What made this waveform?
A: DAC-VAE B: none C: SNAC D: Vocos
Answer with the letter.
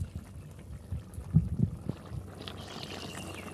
B